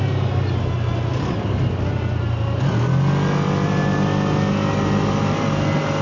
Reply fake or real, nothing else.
real